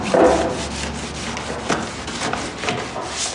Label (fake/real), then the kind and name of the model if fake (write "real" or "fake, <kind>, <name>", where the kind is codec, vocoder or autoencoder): real